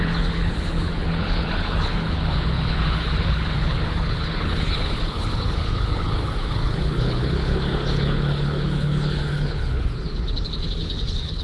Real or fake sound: fake